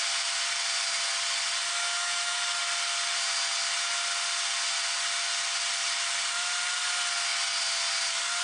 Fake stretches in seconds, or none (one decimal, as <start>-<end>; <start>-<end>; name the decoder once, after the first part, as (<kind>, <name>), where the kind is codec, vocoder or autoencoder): 1.7-2.6 (autoencoder, DAC-VAE)